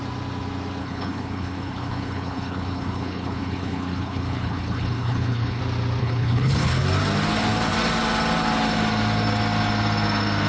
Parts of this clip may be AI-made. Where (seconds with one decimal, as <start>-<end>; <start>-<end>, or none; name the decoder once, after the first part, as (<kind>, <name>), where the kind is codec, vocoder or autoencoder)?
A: 0.8-5.6 (codec, HILCodec); 6.0-6.8